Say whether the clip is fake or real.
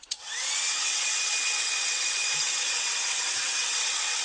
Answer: fake